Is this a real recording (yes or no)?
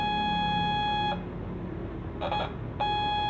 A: yes